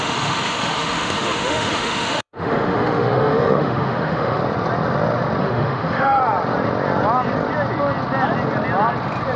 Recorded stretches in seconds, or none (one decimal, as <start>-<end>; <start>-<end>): 4.4-5.4; 6.2-9.4